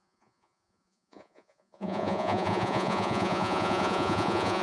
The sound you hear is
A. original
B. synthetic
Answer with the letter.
B